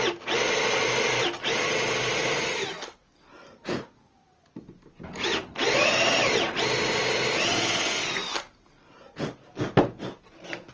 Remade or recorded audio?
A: recorded